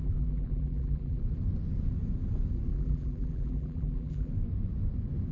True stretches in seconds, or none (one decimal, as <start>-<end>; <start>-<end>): 1.2-2.7; 4.3-5.3